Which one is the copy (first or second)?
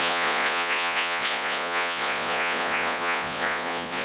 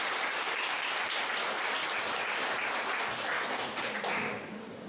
first